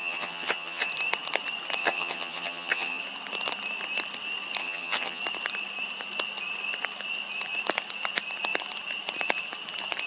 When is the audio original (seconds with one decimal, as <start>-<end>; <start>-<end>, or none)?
0.9-1.8; 3.0-4.6; 5.2-10.1